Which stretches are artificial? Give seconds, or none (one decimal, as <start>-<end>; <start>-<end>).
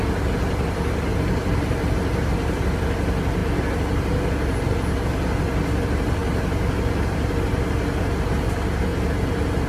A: none